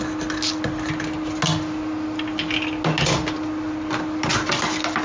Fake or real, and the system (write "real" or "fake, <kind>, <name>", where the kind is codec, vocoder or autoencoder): real